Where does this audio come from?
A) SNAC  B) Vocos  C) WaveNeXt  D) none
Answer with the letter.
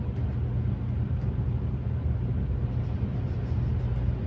D